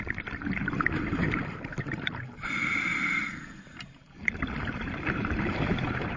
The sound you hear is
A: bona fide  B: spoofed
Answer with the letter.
B